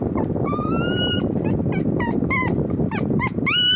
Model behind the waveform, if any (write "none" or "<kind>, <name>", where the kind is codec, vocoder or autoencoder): none